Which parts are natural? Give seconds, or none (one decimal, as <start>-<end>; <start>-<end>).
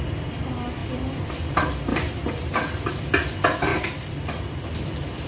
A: 0.0-1.9; 2.9-3.7; 4.2-5.3